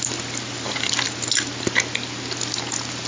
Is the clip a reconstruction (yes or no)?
no